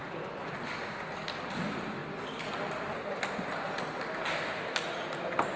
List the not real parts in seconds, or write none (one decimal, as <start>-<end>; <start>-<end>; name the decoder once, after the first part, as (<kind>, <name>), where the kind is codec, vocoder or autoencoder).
none